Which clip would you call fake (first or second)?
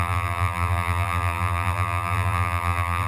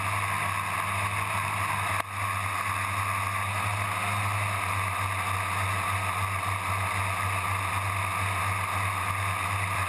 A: first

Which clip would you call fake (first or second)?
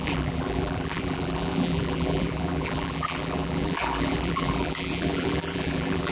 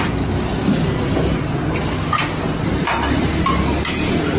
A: first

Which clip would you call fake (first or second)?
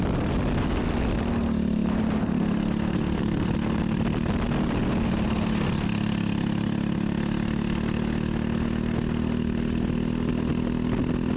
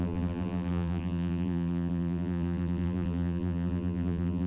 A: second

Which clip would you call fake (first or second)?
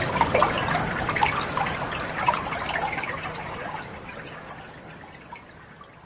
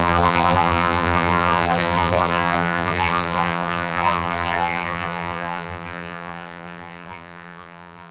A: second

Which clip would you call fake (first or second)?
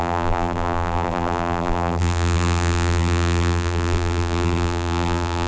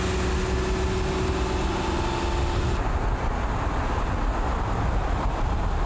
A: first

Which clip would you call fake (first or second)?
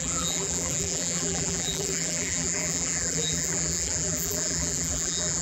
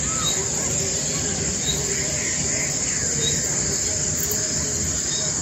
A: first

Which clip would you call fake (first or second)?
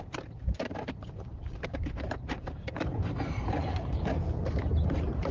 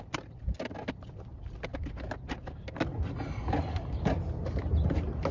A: first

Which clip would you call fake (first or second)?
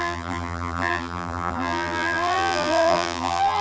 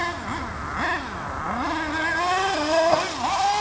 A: first